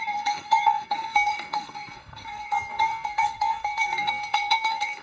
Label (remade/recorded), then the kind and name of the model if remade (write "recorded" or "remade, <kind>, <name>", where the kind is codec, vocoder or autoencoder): remade, codec, SNAC